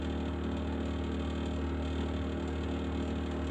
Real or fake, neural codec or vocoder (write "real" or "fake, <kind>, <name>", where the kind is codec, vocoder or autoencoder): real